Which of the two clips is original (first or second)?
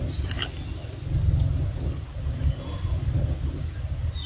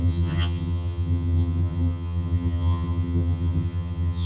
first